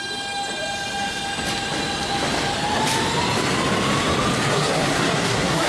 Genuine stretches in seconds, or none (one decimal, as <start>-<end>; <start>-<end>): 0.0-4.5